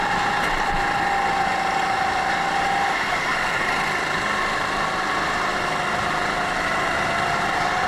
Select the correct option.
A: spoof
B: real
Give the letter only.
B